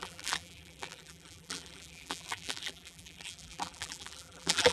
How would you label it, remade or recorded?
remade